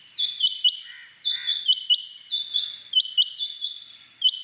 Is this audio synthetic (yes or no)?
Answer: no